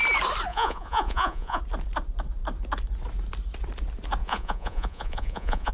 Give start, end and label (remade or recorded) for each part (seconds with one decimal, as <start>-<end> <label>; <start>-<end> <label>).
0.0-0.5 recorded; 0.5-1.6 remade; 1.6-4.2 recorded; 4.2-5.7 remade